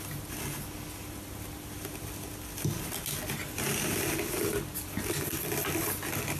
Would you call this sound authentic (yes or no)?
yes